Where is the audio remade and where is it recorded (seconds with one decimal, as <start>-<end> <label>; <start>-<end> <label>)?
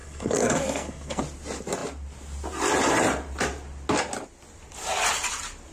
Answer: 0.0-1.2 remade; 1.2-5.7 recorded